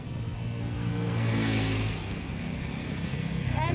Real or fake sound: fake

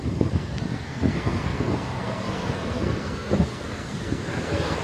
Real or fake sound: fake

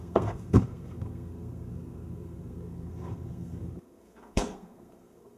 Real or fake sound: fake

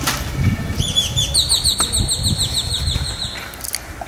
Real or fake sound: real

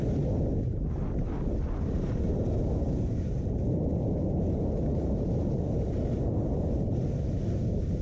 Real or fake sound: real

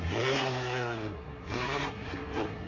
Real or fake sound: fake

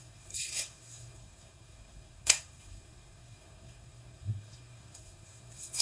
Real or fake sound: fake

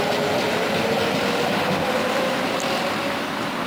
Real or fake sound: real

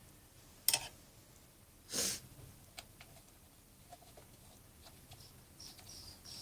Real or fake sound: real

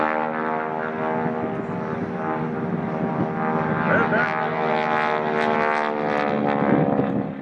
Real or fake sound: real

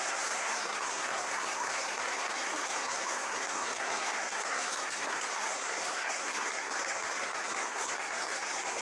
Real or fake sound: fake